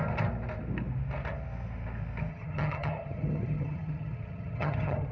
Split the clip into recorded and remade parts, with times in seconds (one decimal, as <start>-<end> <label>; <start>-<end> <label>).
0.0-2.3 recorded; 2.3-5.1 remade

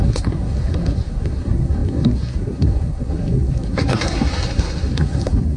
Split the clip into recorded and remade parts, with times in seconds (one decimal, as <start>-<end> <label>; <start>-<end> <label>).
0.0-5.6 remade

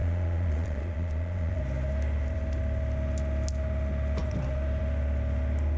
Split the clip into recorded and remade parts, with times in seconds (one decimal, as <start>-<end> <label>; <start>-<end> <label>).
0.0-1.6 remade; 1.6-5.8 recorded

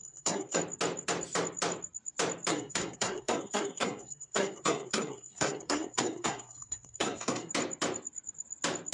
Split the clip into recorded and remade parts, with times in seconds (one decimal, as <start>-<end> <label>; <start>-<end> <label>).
0.0-0.6 remade; 0.6-2.5 recorded; 2.5-7.5 remade; 7.5-8.9 recorded

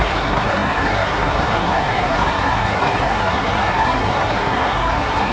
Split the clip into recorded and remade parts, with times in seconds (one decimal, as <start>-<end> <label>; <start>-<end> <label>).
0.0-5.3 remade

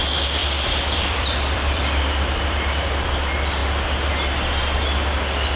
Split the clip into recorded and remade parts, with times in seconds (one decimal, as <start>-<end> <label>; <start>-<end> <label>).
0.0-0.4 recorded; 0.4-2.8 remade; 2.8-5.6 recorded